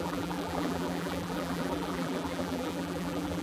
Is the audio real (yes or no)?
no